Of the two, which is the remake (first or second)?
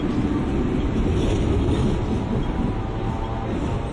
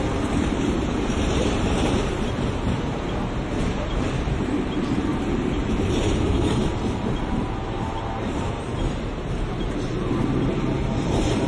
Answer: second